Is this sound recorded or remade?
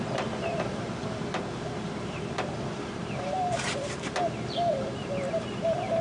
remade